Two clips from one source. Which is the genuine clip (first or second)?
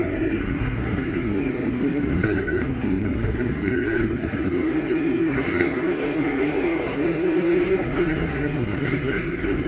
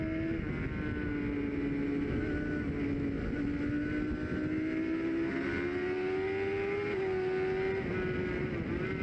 second